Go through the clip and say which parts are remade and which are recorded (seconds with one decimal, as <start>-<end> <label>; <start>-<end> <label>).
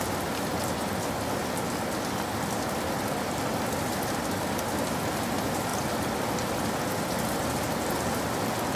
0.0-8.8 recorded